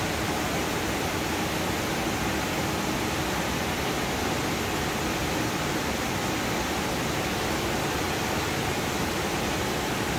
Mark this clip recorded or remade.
recorded